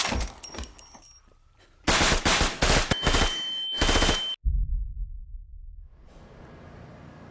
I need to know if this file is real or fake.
real